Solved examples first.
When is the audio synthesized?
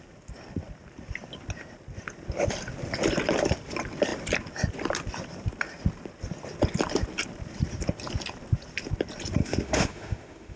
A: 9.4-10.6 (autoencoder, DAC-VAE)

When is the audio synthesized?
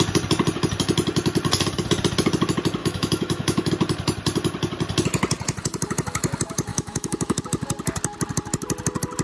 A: 2.8-3.7 (autoencoder, DAC-VAE); 6.7-7.4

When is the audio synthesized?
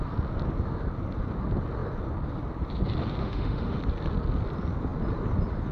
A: 3.2-3.8 (autoencoder, DAC-VAE)